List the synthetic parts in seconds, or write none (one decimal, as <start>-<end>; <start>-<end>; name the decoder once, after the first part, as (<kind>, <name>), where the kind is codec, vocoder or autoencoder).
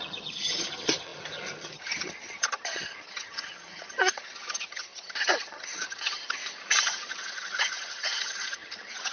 0.0-6.4 (vocoder, HiFi-GAN); 6.9-9.1